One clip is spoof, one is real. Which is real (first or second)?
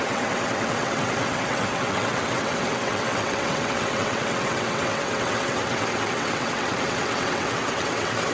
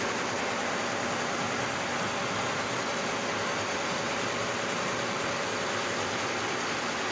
second